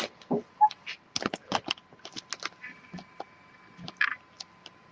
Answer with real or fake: real